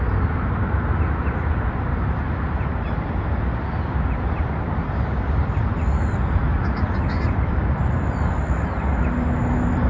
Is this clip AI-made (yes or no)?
no